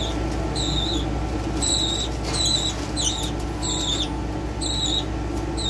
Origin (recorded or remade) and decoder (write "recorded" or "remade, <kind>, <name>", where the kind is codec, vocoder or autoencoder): recorded